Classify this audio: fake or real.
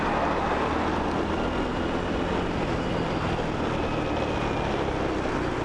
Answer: real